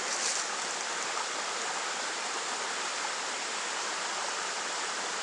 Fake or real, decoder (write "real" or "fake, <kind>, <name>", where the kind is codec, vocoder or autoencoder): real